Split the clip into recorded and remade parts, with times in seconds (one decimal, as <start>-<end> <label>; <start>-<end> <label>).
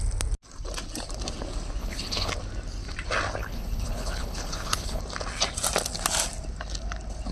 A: 0.0-1.8 recorded; 1.8-2.3 remade; 2.3-3.4 recorded; 3.4-5.0 remade; 5.0-7.3 recorded